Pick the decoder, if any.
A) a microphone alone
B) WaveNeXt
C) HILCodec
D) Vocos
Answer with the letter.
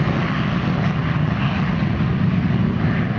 A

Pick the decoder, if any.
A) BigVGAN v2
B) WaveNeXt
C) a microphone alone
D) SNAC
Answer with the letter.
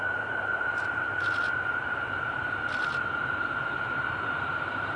A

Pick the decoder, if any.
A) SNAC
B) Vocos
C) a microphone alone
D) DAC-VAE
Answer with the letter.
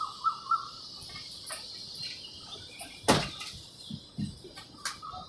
C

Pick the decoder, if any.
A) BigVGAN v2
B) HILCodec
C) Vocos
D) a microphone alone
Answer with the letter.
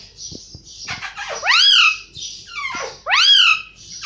A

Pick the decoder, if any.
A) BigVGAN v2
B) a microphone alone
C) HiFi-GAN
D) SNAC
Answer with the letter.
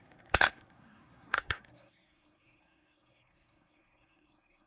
D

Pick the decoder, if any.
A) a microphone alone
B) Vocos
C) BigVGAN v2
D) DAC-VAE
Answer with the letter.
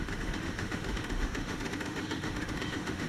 D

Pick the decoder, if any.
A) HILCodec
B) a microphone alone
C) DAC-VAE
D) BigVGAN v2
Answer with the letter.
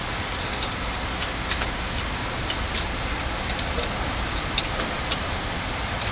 B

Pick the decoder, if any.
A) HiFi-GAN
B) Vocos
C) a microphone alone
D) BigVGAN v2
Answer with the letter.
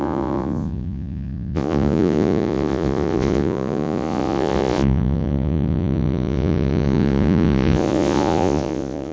B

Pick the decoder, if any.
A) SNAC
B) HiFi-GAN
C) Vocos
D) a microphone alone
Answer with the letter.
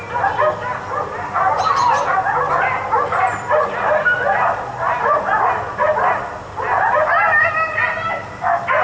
D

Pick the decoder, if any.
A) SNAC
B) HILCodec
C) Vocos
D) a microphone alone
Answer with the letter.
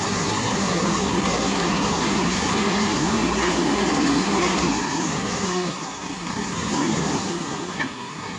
A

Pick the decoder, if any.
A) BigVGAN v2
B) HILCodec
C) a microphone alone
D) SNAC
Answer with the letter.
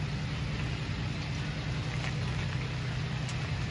C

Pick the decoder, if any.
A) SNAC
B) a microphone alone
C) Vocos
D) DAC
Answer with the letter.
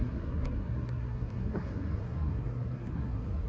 A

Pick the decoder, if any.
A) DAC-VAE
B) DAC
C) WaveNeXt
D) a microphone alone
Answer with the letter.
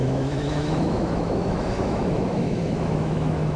A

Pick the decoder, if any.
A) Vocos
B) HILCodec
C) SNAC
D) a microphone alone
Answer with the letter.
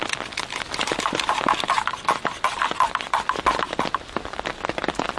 D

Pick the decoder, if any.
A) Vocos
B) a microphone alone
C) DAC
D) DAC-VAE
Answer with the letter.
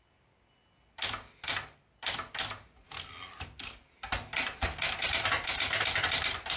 B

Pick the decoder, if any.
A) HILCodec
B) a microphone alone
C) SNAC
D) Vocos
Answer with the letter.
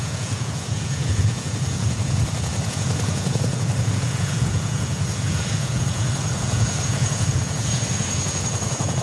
D